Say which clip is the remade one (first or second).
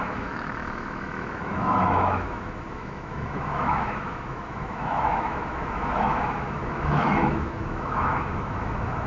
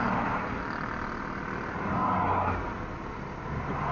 first